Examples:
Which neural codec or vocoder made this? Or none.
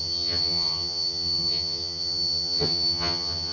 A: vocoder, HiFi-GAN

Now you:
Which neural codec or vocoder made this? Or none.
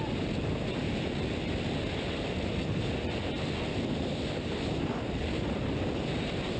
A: none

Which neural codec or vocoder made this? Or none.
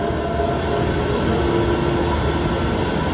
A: none